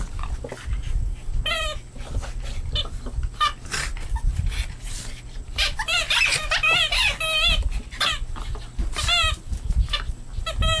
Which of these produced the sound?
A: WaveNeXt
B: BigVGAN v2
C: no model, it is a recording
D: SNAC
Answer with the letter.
C